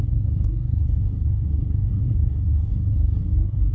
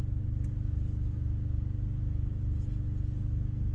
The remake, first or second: first